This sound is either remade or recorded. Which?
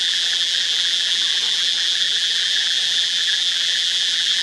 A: remade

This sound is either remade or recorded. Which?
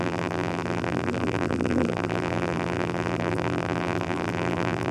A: remade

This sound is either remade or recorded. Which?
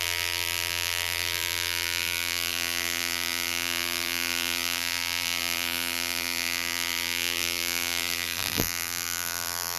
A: remade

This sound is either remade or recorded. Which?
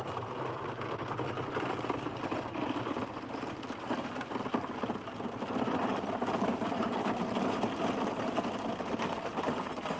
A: recorded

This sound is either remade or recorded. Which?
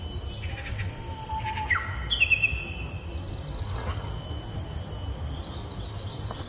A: recorded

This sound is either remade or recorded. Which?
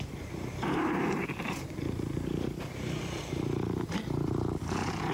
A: remade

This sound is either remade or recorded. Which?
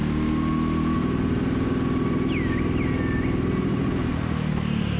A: recorded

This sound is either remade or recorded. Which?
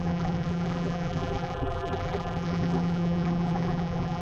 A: remade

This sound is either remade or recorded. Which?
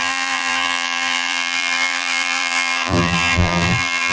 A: remade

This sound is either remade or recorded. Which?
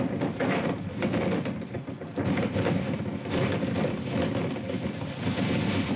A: recorded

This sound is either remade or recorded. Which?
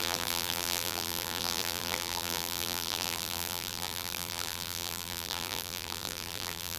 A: remade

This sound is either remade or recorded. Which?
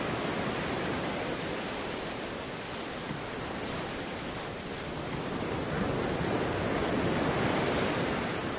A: recorded